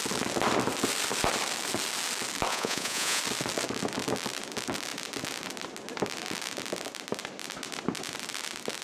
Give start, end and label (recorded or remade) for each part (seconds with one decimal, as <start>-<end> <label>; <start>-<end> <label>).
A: 0.0-2.5 recorded; 2.5-3.2 remade; 3.2-8.8 recorded